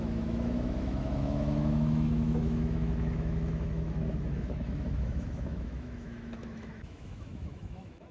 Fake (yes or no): yes